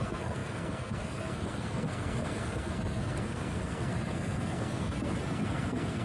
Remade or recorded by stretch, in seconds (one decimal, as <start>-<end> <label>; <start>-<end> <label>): 0.0-6.0 remade